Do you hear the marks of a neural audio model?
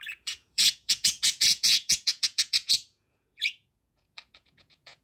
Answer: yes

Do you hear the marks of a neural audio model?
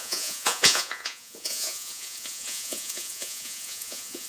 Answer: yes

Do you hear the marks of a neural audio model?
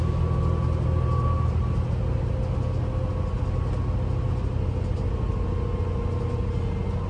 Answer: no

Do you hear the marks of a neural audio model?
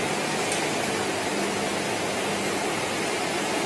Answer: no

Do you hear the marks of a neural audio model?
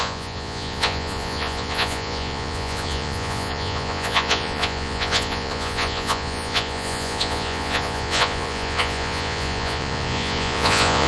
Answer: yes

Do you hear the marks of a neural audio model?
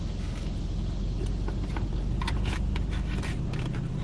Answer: no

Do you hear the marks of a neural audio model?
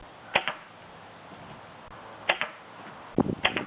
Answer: no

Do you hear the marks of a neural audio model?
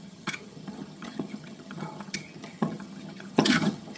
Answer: yes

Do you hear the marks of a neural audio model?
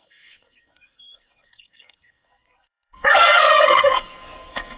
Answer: yes